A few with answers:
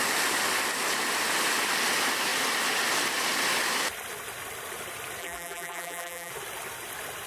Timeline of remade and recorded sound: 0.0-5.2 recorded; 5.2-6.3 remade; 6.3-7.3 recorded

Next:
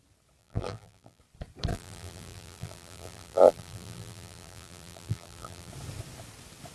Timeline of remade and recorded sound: 0.0-0.4 recorded; 0.4-1.2 remade; 1.2-1.7 recorded; 1.7-5.7 remade; 5.7-6.7 recorded

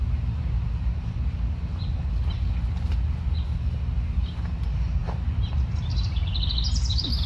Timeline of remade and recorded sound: 0.0-7.3 recorded